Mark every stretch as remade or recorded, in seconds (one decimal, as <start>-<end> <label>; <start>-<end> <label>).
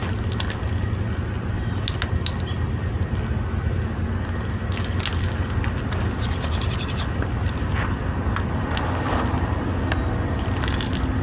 0.0-11.2 recorded